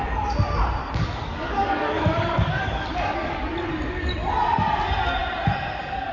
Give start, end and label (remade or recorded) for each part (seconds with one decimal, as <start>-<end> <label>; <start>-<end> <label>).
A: 0.0-0.8 recorded; 0.8-3.4 remade; 3.4-6.1 recorded